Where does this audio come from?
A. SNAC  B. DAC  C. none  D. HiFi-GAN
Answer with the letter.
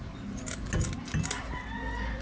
C